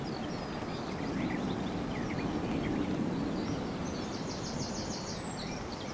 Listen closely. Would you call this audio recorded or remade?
recorded